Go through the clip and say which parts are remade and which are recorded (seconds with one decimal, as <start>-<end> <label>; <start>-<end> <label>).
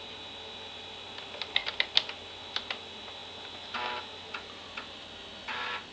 0.0-5.9 recorded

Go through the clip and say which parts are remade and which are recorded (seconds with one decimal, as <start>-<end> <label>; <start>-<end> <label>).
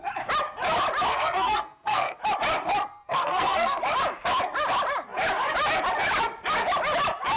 0.0-1.1 recorded; 1.1-2.2 remade; 2.2-2.9 recorded; 2.9-3.8 remade; 3.8-7.4 recorded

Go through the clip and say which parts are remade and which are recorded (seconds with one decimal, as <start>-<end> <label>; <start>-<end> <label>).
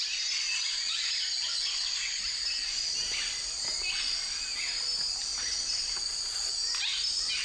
0.0-0.4 recorded; 0.4-1.0 remade; 1.0-1.5 recorded; 1.5-2.2 remade; 2.2-7.4 recorded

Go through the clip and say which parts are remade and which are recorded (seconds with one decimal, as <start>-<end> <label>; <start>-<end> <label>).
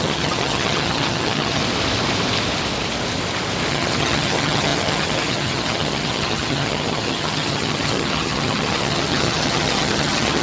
0.0-1.6 remade; 1.6-3.7 recorded; 3.7-10.4 remade